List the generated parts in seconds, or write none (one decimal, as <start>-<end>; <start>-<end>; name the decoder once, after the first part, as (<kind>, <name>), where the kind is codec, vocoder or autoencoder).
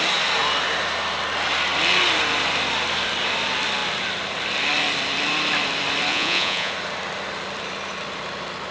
6.1-6.7 (vocoder, Vocos)